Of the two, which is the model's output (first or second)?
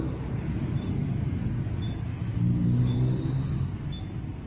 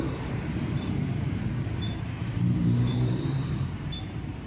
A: second